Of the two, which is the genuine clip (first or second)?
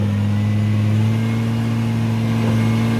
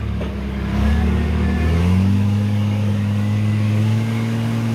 first